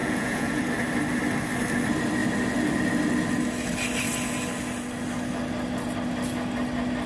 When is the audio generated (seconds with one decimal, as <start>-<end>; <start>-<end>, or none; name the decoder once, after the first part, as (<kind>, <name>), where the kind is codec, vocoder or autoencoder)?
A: 0.0-0.6 (vocoder, Vocos)